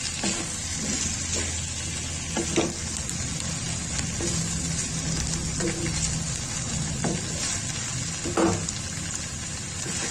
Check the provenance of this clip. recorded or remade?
recorded